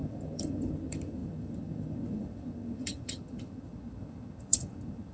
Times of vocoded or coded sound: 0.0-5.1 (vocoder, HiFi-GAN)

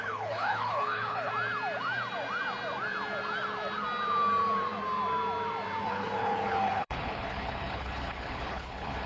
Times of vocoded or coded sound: 0.0-1.3 (codec, HILCodec); 5.9-9.1

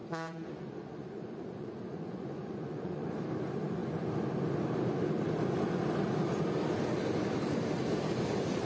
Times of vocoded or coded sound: 0.0-3.1 (vocoder, Vocos)

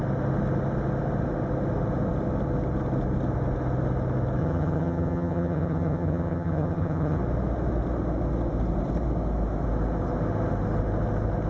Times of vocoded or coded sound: 4.4-7.2 (vocoder, HiFi-GAN)

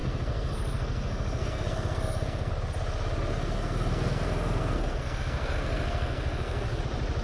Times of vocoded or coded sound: 0.0-2.5 (codec, SNAC); 3.3-6.8

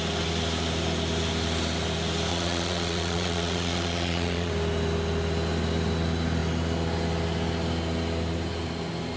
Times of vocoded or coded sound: 2.3-4.5 (vocoder, Vocos)

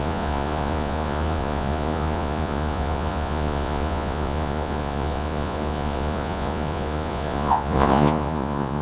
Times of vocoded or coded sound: 0.0-8.8 (vocoder, Vocos)